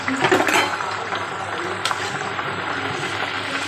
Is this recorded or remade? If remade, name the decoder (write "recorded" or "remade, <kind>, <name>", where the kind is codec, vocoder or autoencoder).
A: recorded